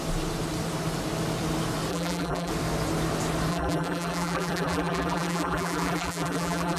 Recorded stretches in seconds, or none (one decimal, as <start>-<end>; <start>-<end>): 0.0-1.9; 2.5-3.5